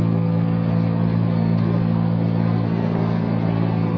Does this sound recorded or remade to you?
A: remade